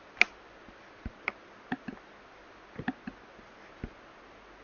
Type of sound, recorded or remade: recorded